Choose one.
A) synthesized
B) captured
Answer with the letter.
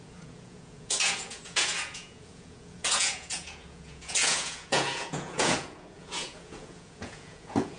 A